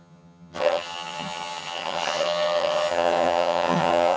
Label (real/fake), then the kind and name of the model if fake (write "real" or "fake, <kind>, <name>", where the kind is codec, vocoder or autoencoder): fake, vocoder, HiFi-GAN